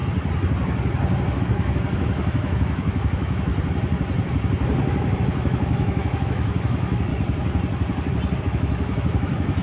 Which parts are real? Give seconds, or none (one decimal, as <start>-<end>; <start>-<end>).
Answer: 0.0-1.4; 3.5-5.2; 7.1-8.4